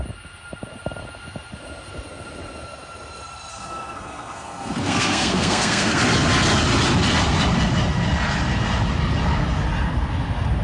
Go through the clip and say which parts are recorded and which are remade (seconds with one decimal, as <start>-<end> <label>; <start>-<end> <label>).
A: 0.0-3.5 recorded; 3.5-6.0 remade; 6.0-10.6 recorded

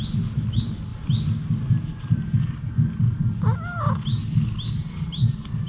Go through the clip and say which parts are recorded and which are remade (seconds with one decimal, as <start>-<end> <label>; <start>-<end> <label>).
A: 0.0-5.7 recorded

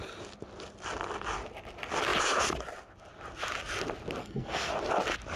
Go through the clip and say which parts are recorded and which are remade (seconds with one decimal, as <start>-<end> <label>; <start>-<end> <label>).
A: 0.0-4.2 recorded; 4.2-4.7 remade; 4.7-5.4 recorded